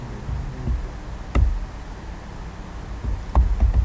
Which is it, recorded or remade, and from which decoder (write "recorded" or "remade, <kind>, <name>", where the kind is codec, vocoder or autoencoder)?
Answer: recorded